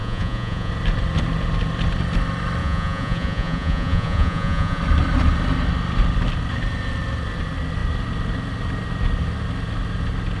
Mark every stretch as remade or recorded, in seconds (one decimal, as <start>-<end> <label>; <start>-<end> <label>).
0.0-0.7 remade; 0.7-2.6 recorded; 2.6-4.8 remade; 4.8-10.4 recorded